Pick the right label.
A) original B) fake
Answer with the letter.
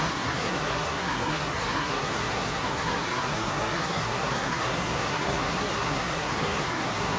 B